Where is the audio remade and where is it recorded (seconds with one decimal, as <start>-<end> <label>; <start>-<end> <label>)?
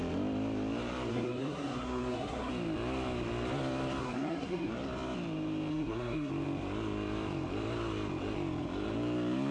0.0-1.1 recorded; 1.1-2.5 remade; 2.5-4.0 recorded; 4.0-4.7 remade; 4.7-5.7 recorded; 5.7-6.3 remade; 6.3-9.5 recorded